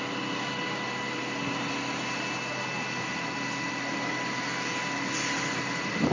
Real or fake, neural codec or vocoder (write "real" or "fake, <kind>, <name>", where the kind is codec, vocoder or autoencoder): real